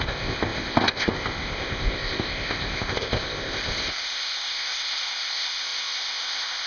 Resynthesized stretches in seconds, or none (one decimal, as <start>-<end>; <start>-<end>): 0.0-6.7